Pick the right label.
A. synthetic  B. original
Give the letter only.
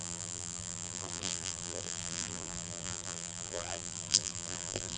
A